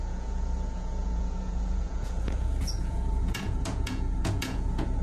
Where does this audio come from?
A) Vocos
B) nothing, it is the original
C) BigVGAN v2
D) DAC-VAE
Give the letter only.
A